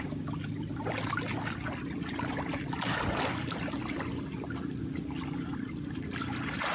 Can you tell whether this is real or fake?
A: real